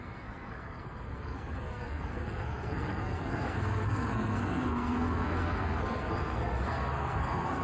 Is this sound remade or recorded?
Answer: remade